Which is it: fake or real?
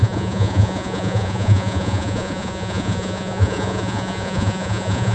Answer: fake